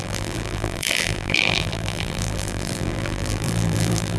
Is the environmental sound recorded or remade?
remade